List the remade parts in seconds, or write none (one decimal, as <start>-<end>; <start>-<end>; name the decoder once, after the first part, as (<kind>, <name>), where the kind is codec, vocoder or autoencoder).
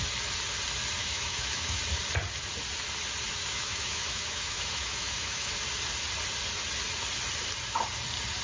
1.0-1.8 (autoencoder, DAC-VAE); 3.4-5.5